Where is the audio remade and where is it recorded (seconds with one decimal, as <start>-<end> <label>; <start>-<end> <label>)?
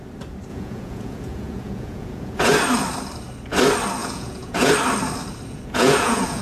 0.0-0.5 recorded; 0.5-2.5 remade; 2.5-4.0 recorded; 4.0-4.7 remade; 4.7-5.5 recorded; 5.5-6.4 remade